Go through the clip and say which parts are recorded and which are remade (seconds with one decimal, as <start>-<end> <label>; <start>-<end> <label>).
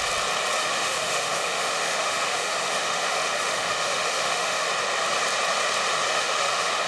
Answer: 0.0-0.6 recorded; 0.6-4.7 remade; 4.7-6.1 recorded; 6.1-6.9 remade